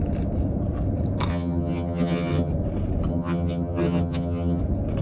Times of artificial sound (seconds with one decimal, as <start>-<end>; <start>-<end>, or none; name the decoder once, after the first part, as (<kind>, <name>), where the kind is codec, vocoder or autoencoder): 1.3-2.5 (vocoder, HiFi-GAN); 3.1-4.6